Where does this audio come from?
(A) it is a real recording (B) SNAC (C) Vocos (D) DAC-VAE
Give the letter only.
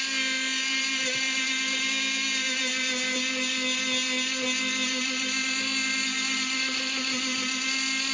A